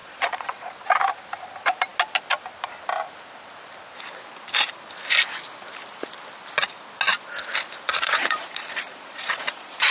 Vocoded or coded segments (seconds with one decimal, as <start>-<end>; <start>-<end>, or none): 0.0-0.7; 7.9-9.9